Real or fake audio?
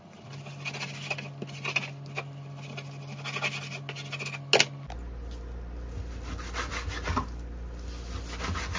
real